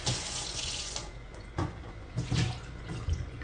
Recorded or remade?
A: remade